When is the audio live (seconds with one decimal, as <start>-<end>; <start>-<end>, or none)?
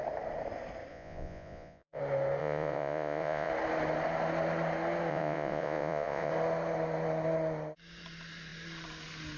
0.0-0.9; 2.0-2.4; 3.5-5.1; 6.3-9.4